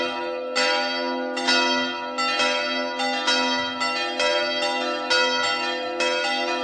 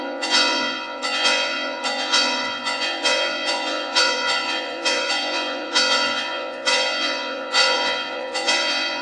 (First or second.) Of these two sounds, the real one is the first